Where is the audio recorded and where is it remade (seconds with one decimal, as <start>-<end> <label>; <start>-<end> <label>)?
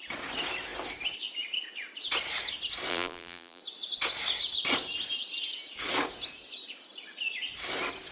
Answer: 0.0-2.9 recorded; 2.9-3.6 remade; 3.6-8.1 recorded